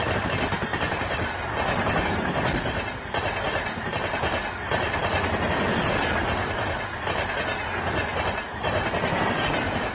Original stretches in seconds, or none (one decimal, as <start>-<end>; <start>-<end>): 0.0-0.7; 1.3-9.9